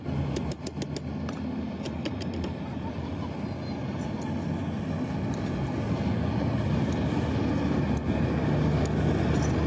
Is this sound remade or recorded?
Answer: recorded